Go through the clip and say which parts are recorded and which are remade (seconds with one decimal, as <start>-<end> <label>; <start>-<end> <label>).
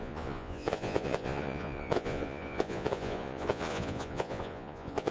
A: 0.0-5.1 remade